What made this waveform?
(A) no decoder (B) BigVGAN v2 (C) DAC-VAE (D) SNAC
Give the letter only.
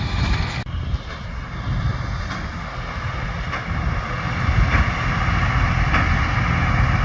A